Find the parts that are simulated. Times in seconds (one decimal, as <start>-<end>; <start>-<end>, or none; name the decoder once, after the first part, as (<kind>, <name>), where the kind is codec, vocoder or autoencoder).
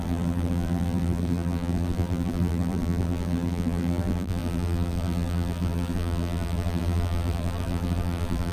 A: 0.0-8.5 (vocoder, BigVGAN v2)